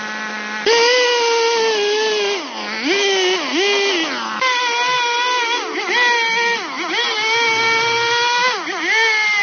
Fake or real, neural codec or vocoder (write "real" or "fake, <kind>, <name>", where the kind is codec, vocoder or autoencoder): real